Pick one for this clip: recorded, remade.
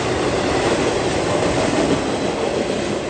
recorded